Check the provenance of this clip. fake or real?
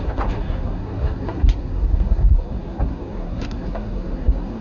fake